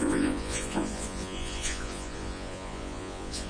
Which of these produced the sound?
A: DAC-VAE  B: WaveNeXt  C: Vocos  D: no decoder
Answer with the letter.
C